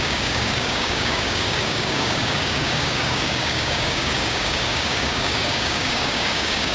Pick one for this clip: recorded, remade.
remade